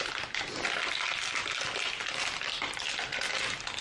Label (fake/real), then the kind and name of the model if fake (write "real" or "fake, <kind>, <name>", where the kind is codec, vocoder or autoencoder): real